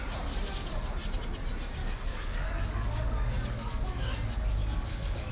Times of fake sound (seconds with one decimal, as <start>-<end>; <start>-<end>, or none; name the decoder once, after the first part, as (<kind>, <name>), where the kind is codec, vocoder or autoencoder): 1.8-4.1 (codec, DAC); 4.6-5.3